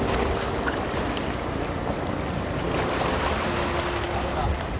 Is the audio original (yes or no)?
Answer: yes